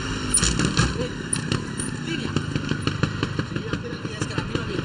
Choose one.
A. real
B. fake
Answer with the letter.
A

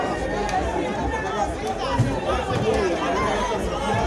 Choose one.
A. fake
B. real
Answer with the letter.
B